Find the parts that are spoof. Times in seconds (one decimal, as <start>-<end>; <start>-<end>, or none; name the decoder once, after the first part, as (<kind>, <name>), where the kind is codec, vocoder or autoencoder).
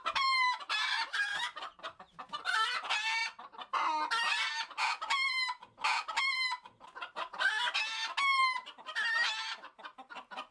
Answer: none